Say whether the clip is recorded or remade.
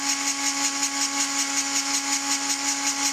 recorded